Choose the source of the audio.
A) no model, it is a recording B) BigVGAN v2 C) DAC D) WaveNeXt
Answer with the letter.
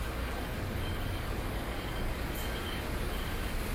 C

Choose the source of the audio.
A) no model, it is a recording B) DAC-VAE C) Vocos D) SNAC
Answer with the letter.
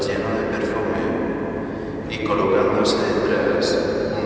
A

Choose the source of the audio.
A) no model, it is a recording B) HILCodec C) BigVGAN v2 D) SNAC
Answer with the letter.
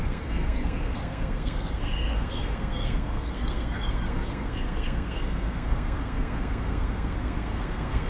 D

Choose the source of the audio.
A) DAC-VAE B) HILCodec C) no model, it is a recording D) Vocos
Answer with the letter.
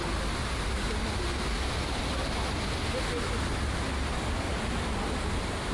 C